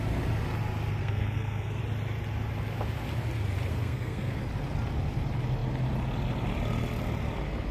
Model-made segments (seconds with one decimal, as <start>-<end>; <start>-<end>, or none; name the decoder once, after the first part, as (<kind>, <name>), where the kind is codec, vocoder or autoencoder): 1.0-1.8 (codec, SNAC); 3.7-4.4